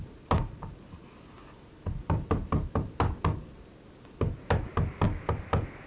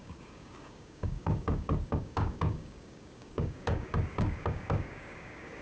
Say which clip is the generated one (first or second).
second